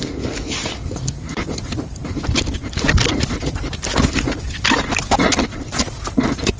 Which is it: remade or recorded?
recorded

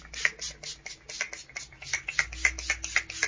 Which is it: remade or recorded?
recorded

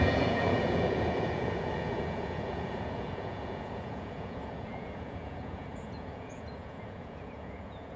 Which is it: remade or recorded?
remade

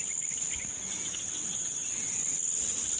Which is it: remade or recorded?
recorded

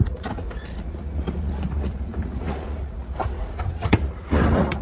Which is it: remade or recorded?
remade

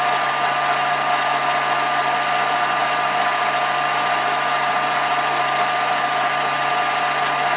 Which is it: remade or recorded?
recorded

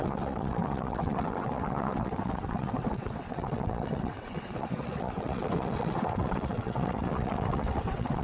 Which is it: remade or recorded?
remade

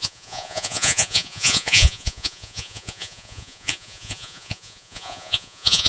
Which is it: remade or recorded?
remade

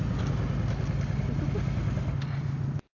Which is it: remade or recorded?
recorded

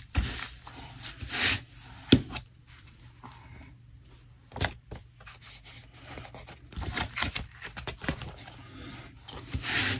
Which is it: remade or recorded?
recorded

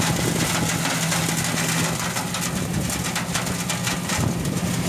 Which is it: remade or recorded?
recorded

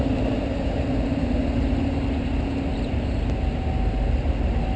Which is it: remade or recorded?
recorded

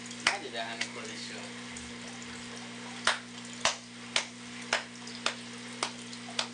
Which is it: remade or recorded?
recorded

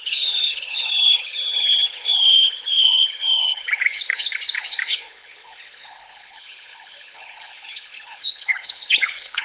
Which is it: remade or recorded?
remade